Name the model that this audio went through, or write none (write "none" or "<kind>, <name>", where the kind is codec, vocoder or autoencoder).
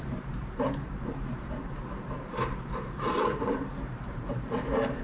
vocoder, BigVGAN v2